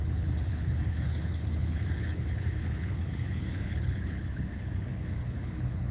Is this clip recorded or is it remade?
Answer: remade